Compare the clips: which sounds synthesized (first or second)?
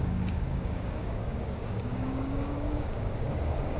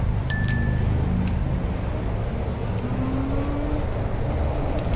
first